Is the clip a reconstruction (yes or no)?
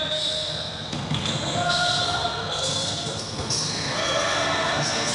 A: yes